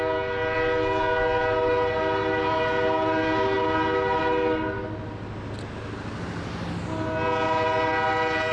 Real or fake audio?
real